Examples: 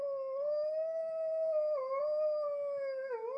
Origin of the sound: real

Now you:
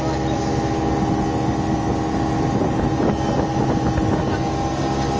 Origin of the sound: real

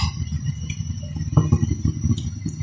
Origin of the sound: real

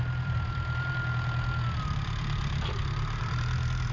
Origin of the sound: fake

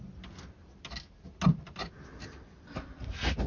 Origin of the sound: real